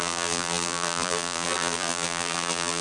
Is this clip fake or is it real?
fake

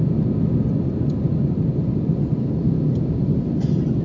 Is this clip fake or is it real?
real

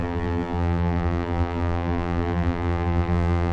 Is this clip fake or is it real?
fake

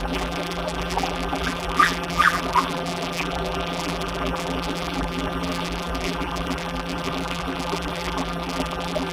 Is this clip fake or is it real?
fake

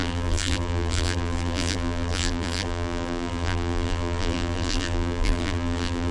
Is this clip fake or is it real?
fake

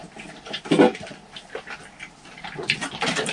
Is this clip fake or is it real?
fake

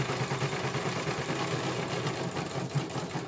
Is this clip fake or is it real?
real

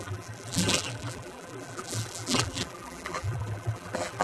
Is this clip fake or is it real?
fake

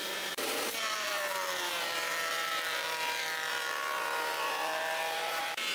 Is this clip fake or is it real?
fake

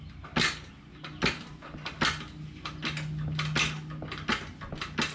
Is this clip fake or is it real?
real